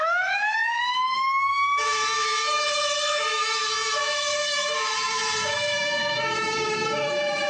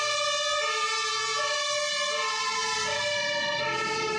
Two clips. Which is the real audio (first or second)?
second